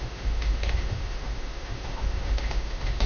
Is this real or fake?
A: fake